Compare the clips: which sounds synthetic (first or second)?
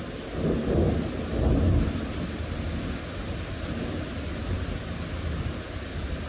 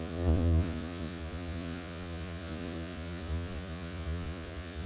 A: second